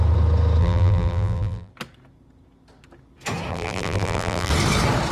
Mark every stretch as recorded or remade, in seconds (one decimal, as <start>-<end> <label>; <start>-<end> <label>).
0.0-0.6 recorded; 0.6-1.7 remade; 1.7-3.5 recorded; 3.5-4.5 remade; 4.5-5.1 recorded